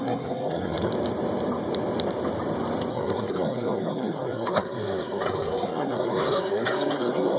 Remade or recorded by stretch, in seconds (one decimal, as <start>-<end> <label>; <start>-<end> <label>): 0.0-0.9 remade; 0.9-2.9 recorded; 2.9-7.4 remade